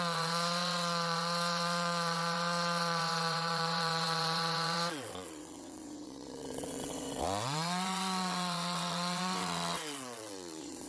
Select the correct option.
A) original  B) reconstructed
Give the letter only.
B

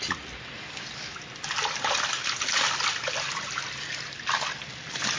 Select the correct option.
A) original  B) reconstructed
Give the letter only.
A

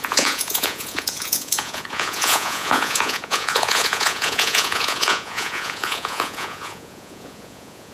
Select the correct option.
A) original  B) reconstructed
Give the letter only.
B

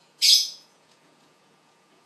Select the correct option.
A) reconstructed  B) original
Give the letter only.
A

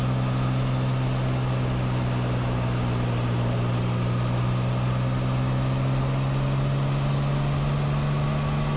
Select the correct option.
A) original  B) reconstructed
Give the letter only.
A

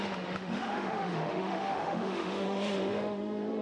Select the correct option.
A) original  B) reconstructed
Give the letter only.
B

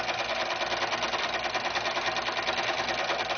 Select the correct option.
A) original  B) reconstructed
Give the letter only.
A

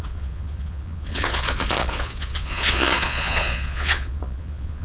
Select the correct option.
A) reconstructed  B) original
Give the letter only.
A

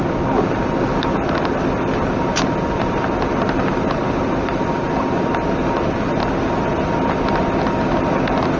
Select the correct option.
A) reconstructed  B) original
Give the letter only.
B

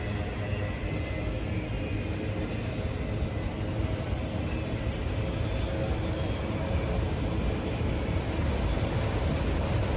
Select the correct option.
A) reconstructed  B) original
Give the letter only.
B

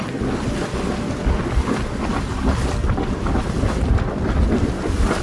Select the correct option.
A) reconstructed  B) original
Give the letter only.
B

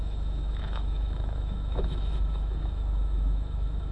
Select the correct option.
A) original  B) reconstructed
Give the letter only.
B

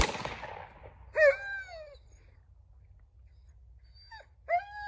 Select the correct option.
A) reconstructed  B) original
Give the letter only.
B